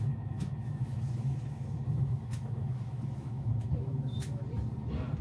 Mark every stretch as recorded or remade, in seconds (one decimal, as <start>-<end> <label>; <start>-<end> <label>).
0.0-4.4 remade; 4.4-5.2 recorded